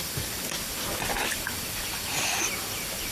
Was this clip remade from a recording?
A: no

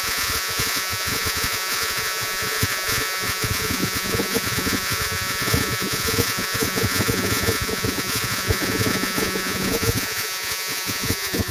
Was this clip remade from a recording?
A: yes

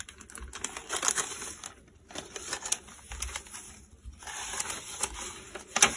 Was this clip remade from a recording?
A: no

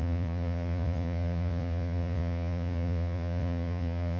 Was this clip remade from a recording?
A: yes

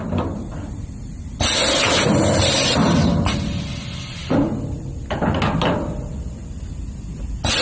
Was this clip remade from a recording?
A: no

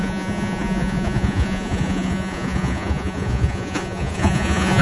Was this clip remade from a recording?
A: yes